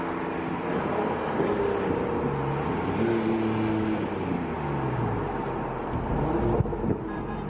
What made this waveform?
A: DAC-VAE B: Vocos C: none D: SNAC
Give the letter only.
C